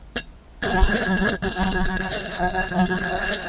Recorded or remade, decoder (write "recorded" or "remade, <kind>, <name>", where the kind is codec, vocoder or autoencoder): remade, vocoder, Vocos